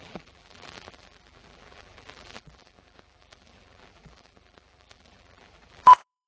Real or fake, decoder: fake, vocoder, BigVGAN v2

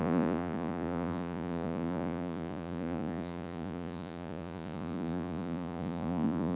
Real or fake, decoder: fake, vocoder, Vocos